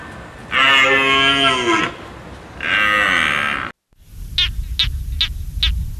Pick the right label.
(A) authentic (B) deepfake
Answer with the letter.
A